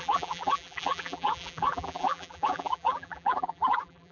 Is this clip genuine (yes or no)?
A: no